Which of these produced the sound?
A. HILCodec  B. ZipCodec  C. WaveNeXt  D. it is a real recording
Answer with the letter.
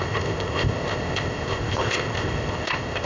B